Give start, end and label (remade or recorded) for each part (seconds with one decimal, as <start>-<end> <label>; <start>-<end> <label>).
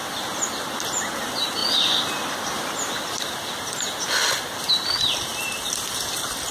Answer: 0.0-5.3 recorded; 5.3-6.0 remade; 6.0-6.5 recorded